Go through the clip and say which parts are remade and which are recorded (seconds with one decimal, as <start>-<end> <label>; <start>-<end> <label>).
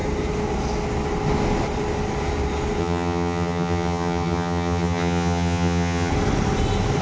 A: 0.0-2.8 recorded; 2.8-6.1 remade; 6.1-7.0 recorded